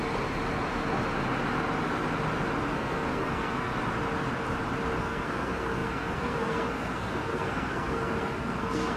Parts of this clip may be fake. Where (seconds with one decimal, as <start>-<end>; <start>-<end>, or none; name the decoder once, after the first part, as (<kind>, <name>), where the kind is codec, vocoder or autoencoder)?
2.7-3.7 (codec, SNAC); 5.0-9.0